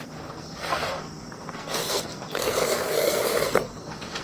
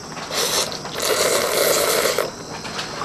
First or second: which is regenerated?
first